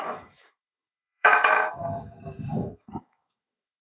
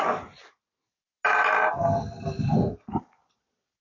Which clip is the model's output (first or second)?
first